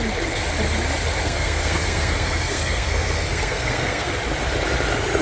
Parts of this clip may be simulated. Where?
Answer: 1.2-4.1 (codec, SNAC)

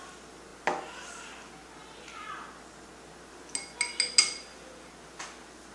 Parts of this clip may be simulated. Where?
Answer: none

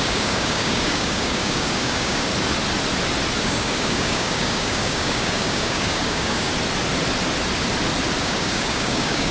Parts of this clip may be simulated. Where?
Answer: 0.0-2.3 (codec, DAC); 3.4-6.5; 8.2-9.3

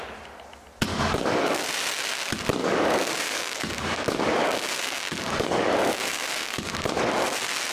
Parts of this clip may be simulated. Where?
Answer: 0.9-1.6 (codec, DAC); 2.6-7.1